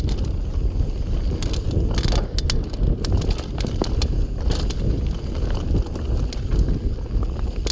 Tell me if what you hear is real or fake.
real